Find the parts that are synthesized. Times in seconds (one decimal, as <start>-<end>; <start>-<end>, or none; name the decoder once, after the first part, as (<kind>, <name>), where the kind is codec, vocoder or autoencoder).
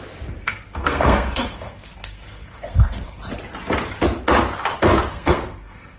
0.4-3.2 (codec, SNAC); 5.1-6.0